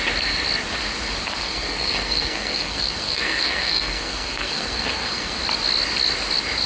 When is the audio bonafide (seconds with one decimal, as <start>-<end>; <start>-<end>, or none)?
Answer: 0.0-1.4; 5.4-6.7